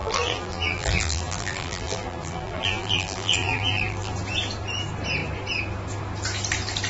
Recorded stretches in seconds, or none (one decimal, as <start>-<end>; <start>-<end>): 4.1-6.9